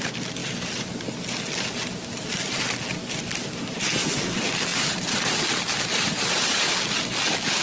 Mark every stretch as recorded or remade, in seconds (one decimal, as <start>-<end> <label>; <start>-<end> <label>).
0.0-4.7 recorded; 4.7-5.4 remade; 5.4-5.9 recorded; 5.9-6.7 remade; 6.7-7.6 recorded